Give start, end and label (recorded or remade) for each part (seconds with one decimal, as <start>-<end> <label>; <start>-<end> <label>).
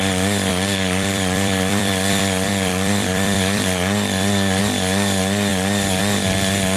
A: 0.0-0.5 recorded; 0.5-4.6 remade; 4.6-6.8 recorded